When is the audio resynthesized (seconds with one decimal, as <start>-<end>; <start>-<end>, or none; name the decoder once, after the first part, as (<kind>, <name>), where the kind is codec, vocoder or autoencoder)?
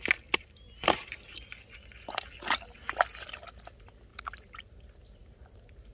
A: 4.1-4.7 (vocoder, BigVGAN v2); 5.2-5.9